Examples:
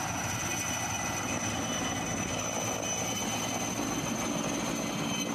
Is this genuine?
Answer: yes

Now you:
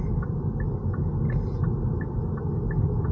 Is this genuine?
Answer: yes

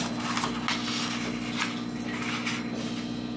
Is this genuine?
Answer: yes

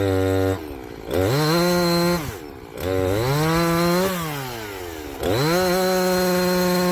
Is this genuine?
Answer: yes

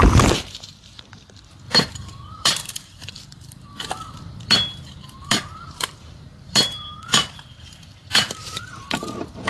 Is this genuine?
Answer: no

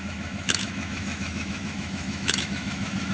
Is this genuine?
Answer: no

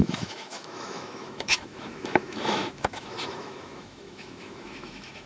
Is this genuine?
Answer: no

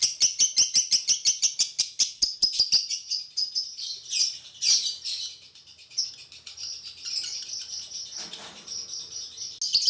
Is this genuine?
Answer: yes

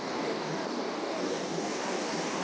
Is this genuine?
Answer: no